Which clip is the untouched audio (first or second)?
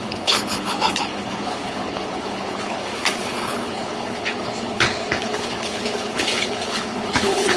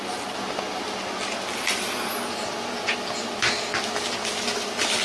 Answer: second